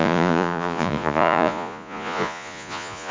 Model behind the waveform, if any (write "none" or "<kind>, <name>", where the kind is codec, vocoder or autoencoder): vocoder, Vocos